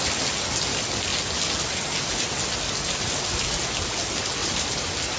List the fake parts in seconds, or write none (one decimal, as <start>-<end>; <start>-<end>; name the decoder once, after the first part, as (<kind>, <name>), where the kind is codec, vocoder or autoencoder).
4.4-5.2 (vocoder, BigVGAN v2)